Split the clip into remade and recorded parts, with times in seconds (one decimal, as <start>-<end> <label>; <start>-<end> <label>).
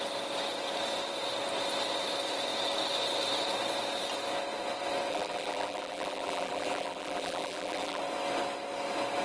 0.0-5.1 recorded; 5.1-8.0 remade; 8.0-9.2 recorded